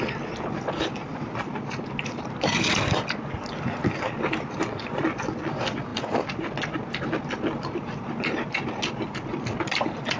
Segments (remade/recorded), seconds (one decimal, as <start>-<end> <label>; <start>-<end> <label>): 0.0-10.2 recorded